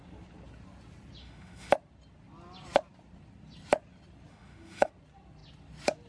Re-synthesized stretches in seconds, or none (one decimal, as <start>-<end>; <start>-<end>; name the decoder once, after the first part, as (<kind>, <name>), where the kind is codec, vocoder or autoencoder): 1.2-1.7 (autoencoder, DAC-VAE); 4.3-4.9